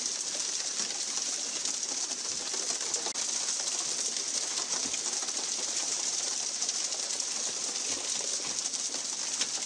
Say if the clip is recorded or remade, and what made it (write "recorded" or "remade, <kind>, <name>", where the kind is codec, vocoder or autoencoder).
recorded